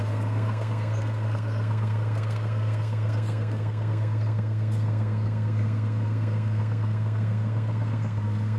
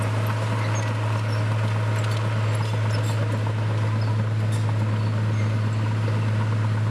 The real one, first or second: second